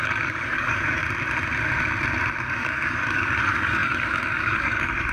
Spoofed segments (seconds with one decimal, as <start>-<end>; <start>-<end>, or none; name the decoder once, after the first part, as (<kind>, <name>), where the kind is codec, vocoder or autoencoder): 0.0-1.0 (codec, DAC); 2.4-5.1